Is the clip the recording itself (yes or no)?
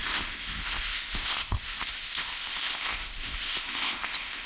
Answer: no